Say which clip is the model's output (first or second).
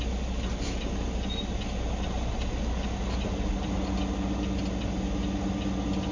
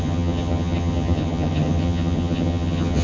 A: second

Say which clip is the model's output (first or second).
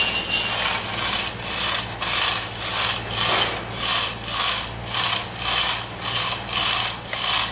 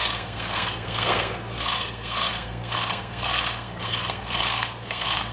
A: second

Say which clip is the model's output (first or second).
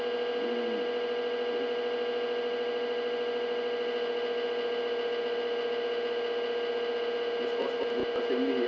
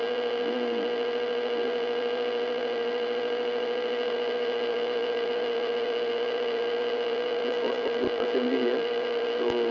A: second